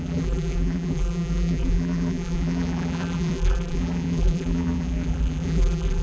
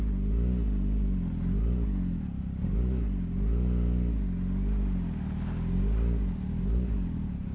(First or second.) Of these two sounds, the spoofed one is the first